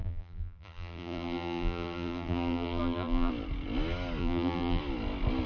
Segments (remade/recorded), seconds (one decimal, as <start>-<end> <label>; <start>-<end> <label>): 0.0-3.3 remade; 3.3-4.2 recorded; 4.2-4.8 remade; 4.8-5.5 recorded